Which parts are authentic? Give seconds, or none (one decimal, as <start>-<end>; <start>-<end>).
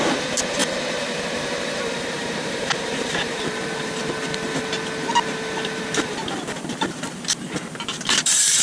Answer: 4.0-8.2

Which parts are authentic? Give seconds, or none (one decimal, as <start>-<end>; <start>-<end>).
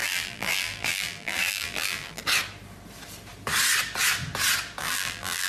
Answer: 2.2-4.8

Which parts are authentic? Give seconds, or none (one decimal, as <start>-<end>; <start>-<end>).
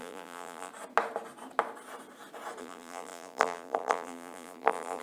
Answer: 0.7-2.6